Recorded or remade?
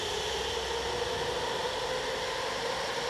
recorded